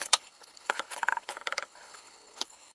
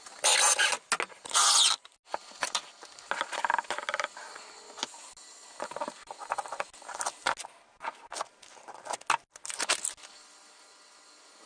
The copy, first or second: first